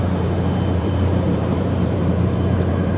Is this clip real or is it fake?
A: fake